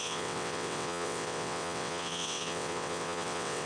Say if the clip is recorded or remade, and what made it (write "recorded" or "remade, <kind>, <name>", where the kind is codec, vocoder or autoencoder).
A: remade, vocoder, WaveNeXt